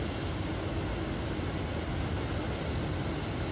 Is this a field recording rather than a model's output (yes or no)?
yes